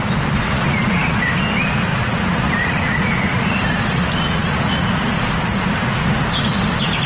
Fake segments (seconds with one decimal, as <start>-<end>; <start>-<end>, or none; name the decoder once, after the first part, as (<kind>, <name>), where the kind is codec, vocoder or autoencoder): 0.4-1.3 (vocoder, Vocos); 1.9-6.2